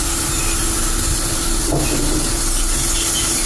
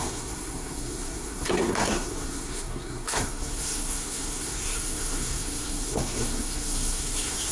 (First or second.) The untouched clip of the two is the first